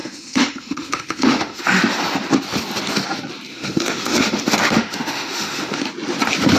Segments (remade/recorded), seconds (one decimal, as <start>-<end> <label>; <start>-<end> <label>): 0.0-1.8 remade; 1.8-3.5 recorded; 3.5-5.8 remade; 5.8-6.6 recorded